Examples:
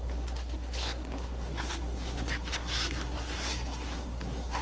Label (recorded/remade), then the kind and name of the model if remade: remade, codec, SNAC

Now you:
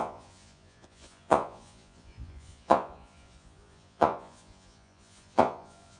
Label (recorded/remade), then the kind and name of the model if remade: remade, vocoder, Vocos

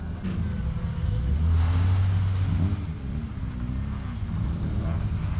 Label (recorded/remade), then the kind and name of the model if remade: recorded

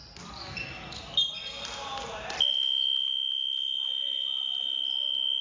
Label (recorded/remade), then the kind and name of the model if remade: recorded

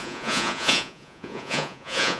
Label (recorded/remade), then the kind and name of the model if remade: remade, vocoder, Vocos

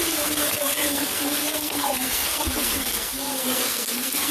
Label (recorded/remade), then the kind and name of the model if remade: remade, codec, SNAC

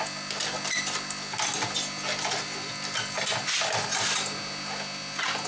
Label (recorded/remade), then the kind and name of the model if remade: recorded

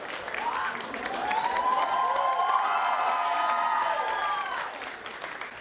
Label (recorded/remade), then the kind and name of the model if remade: recorded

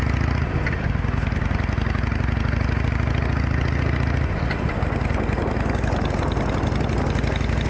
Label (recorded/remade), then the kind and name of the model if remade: recorded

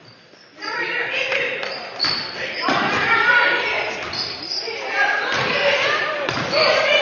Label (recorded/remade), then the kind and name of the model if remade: remade, vocoder, BigVGAN v2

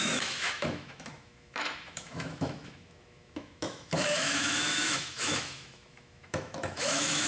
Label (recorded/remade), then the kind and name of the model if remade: remade, autoencoder, DAC-VAE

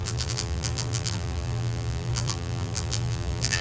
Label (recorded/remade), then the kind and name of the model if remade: remade, vocoder, BigVGAN v2